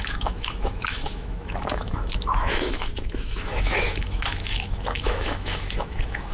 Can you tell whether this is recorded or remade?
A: remade